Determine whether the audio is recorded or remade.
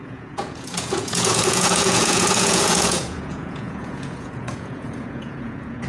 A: remade